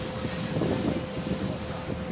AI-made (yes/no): no